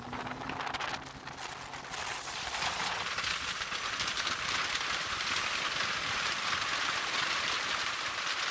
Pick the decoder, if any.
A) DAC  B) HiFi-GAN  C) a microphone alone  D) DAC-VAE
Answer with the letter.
C